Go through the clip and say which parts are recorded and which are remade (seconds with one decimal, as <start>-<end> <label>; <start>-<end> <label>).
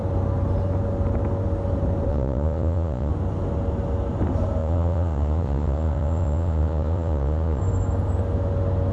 0.0-2.1 recorded; 2.1-3.1 remade; 3.1-4.6 recorded; 4.6-7.6 remade; 7.6-8.9 recorded